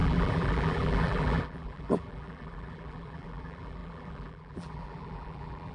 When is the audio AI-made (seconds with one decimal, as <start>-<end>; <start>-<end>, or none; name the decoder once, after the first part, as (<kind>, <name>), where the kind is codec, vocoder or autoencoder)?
0.0-5.7 (vocoder, BigVGAN v2)